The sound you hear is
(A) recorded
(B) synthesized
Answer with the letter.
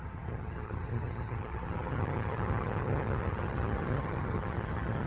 B